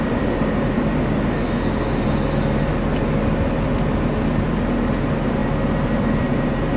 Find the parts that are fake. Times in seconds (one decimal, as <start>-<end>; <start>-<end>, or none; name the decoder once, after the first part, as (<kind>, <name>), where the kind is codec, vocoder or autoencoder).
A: 0.0-0.9 (vocoder, BigVGAN v2); 5.0-5.4; 6.0-6.8